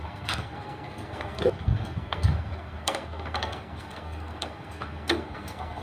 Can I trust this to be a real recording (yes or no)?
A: no